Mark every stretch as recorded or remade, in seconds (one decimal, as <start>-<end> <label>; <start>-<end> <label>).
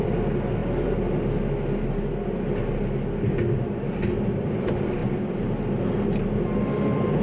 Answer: 0.0-7.2 recorded